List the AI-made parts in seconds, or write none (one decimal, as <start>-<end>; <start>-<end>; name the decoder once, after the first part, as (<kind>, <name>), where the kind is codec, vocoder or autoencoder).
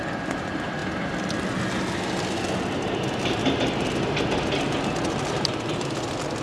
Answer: none